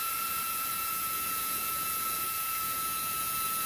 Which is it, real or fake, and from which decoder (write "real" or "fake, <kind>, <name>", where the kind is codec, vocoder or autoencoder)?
fake, vocoder, Vocos